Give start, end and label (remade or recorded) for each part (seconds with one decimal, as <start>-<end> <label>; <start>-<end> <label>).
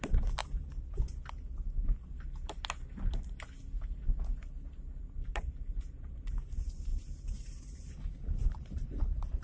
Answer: 0.0-0.4 remade; 0.4-5.0 recorded; 5.0-9.4 remade